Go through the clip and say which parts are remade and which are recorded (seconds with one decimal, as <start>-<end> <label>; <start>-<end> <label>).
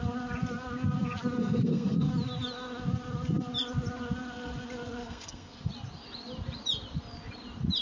0.0-1.4 recorded; 1.4-2.1 remade; 2.1-5.0 recorded; 5.0-5.7 remade; 5.7-7.8 recorded